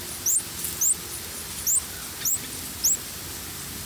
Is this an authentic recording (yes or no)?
yes